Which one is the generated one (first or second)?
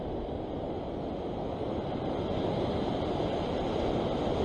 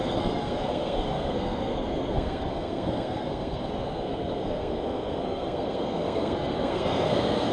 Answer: second